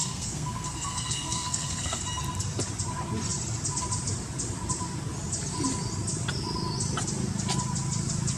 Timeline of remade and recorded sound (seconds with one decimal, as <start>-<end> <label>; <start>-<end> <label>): 0.0-2.0 remade; 2.0-8.4 recorded